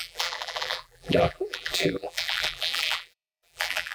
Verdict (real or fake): fake